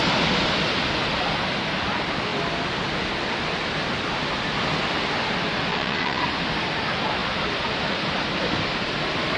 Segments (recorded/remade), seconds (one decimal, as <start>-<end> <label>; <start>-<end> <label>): 0.0-5.7 recorded; 5.7-6.2 remade; 6.2-9.4 recorded